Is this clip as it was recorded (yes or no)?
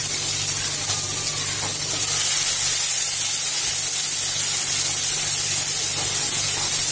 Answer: yes